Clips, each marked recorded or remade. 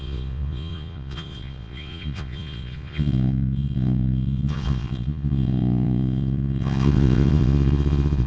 remade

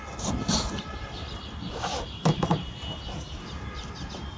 recorded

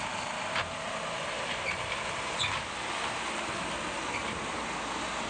recorded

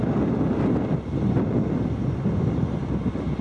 recorded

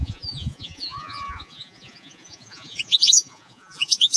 remade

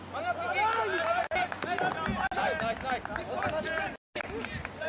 recorded